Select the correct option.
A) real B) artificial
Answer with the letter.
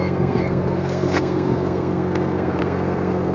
B